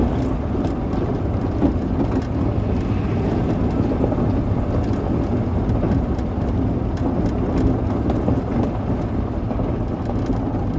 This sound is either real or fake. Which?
real